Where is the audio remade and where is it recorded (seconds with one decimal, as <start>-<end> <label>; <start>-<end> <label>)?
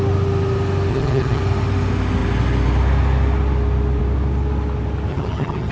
0.0-0.9 recorded; 0.9-1.4 remade; 1.4-5.1 recorded; 5.1-5.7 remade